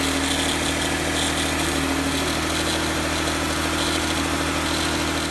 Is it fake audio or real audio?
real